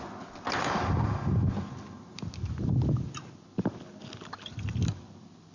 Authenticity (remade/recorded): recorded